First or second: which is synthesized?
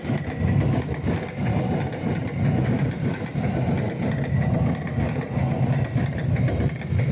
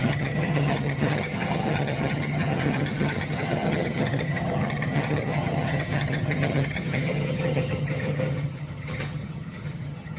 second